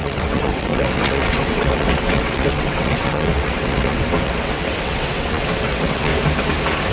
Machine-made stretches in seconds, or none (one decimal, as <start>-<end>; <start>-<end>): 0.0-6.1